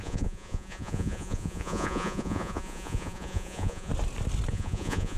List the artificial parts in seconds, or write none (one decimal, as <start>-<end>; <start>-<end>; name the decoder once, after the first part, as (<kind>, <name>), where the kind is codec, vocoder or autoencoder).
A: 0.0-3.9 (vocoder, Vocos); 4.5-5.2